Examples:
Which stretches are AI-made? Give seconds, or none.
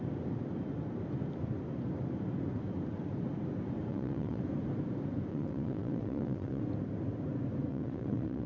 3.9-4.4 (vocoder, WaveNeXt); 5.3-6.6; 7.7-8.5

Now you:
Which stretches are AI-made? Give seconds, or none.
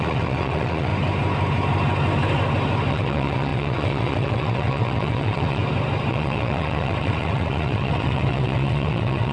0.0-0.9 (vocoder, WaveNeXt); 2.9-5.6; 6.1-9.3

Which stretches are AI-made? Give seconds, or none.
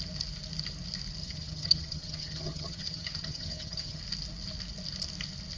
1.2-4.0 (vocoder, HiFi-GAN)